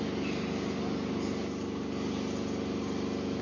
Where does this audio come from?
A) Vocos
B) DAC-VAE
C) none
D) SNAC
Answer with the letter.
C